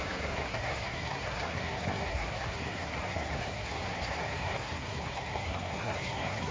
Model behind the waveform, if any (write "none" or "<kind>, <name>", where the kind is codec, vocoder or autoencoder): codec, SNAC